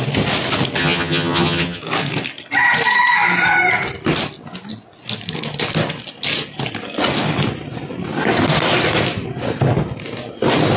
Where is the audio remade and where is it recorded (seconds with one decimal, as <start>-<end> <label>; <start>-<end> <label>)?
0.0-0.8 recorded; 0.8-1.8 remade; 1.8-10.8 recorded

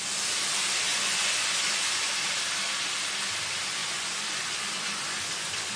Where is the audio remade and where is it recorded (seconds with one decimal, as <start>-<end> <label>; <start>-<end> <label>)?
0.0-0.9 recorded; 0.9-2.1 remade; 2.1-3.8 recorded; 3.8-5.8 remade

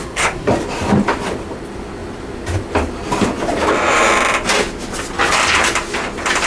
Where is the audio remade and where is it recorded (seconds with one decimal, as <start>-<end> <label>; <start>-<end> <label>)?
0.0-0.5 remade; 0.5-6.5 recorded

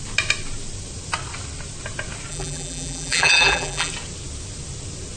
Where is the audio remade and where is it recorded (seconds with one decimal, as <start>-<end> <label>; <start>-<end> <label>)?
0.0-2.3 recorded; 2.3-3.9 remade; 3.9-5.2 recorded

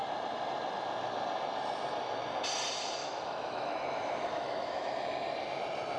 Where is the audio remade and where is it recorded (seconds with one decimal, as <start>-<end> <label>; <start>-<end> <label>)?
0.0-3.0 recorded; 3.0-4.9 remade; 4.9-6.0 recorded

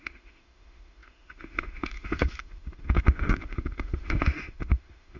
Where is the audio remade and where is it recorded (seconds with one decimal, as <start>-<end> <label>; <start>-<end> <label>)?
0.0-5.2 remade

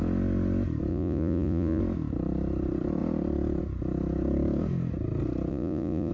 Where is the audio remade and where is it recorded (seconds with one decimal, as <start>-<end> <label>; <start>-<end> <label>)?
0.0-0.9 recorded; 0.9-1.8 remade; 1.8-5.5 recorded; 5.5-6.1 remade